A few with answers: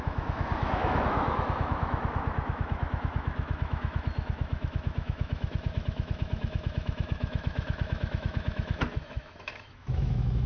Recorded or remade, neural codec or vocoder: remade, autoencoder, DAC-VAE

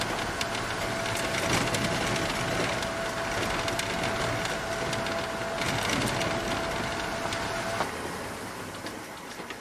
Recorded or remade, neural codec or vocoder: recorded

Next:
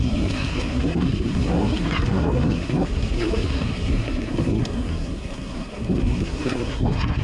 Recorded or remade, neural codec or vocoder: remade, codec, SNAC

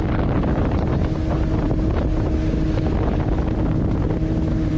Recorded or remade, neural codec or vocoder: recorded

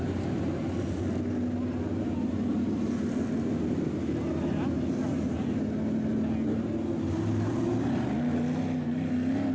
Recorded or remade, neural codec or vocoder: recorded